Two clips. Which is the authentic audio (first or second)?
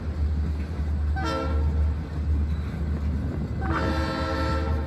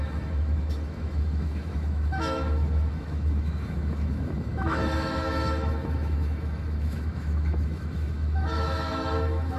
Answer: first